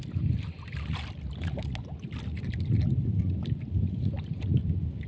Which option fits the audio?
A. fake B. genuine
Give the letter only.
B